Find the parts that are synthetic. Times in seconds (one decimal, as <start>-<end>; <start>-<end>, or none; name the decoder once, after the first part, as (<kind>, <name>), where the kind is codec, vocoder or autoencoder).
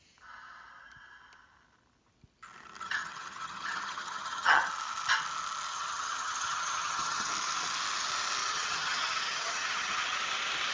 2.8-4.7 (vocoder, HiFi-GAN); 5.7-7.3; 8.4-10.2